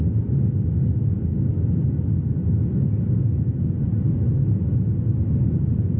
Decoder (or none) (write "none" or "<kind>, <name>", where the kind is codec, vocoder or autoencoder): none